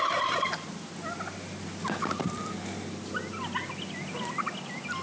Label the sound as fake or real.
real